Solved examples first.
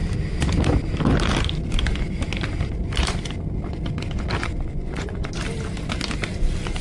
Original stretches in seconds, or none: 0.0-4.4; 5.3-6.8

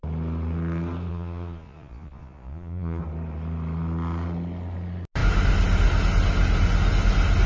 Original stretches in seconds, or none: 0.0-1.1; 3.0-7.5

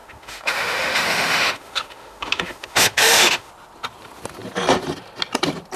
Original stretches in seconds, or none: 3.5-5.8

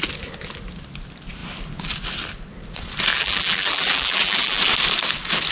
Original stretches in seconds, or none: 0.0-3.1; 4.6-5.5

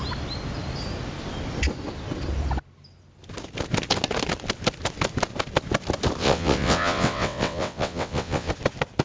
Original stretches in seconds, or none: 0.0-6.2; 8.5-9.0

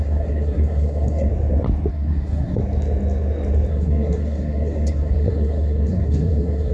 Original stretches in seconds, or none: 1.3-1.9; 2.6-3.7

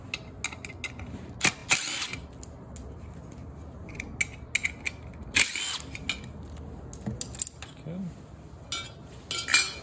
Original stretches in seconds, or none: 0.0-9.8

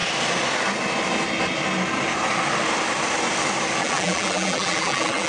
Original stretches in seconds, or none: 0.0-3.8